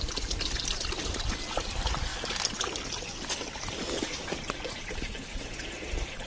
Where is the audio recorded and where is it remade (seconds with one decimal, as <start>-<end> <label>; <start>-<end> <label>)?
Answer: 0.0-6.3 recorded